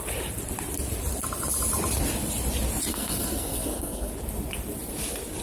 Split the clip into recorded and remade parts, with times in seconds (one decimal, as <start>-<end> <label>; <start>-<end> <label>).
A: 0.0-2.9 recorded; 2.9-4.1 remade; 4.1-5.4 recorded